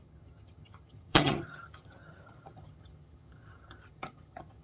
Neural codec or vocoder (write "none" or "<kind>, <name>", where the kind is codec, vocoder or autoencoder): vocoder, HiFi-GAN